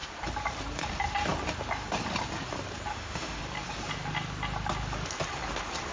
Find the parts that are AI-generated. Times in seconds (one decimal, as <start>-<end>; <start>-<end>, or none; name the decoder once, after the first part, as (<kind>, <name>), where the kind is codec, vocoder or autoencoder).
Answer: 2.9-3.4 (autoencoder, DAC-VAE)